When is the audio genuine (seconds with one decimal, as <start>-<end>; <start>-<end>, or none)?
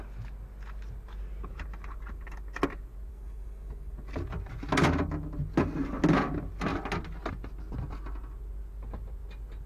0.0-3.1; 3.9-9.7